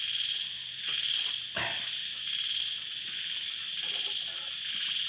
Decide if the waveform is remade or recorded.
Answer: recorded